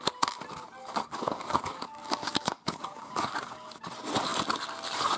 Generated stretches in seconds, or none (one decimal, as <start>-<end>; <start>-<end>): 0.8-3.8

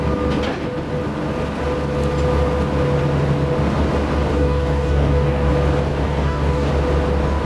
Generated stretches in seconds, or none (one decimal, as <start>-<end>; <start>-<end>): 4.3-5.5; 5.9-6.7

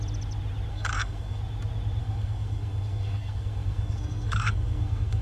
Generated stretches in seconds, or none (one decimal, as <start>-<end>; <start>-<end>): 0.7-1.4; 2.0-5.2

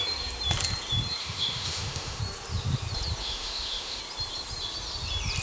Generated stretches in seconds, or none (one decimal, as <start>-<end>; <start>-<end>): 1.2-2.2; 3.2-4.0